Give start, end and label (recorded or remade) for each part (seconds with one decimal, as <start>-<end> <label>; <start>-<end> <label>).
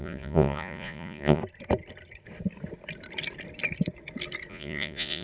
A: 0.0-1.4 remade; 1.4-4.5 recorded; 4.5-5.2 remade